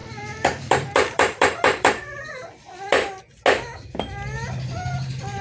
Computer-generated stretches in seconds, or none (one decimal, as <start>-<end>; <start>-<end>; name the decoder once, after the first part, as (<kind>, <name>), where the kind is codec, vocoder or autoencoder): 0.0-3.2 (vocoder, BigVGAN v2)